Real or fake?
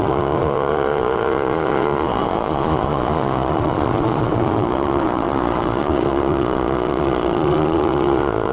fake